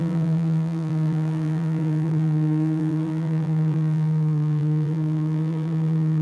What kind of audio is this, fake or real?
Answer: fake